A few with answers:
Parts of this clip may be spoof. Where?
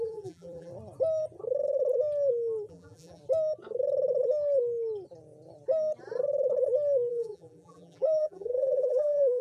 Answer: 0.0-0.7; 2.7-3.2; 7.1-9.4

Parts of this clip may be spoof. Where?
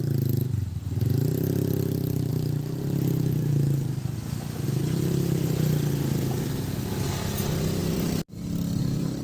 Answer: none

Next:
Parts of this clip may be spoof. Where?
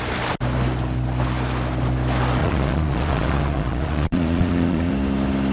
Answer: 2.4-4.9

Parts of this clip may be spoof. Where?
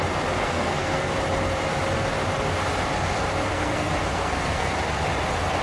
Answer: 0.4-1.1; 3.5-4.7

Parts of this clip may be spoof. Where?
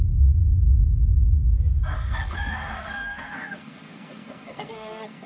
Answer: 1.9-5.3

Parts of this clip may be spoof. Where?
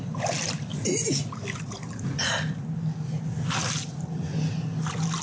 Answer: 0.7-1.9